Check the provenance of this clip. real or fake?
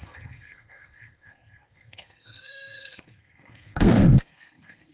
fake